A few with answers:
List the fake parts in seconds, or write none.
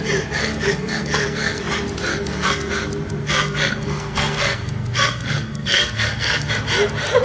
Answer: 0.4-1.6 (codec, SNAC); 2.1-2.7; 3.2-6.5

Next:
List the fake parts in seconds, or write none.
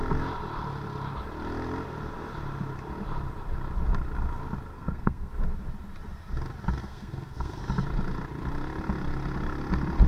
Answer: 4.7-5.3 (codec, SNAC); 6.8-7.6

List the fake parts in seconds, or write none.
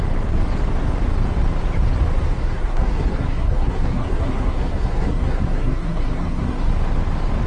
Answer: 2.2-6.7 (codec, SNAC)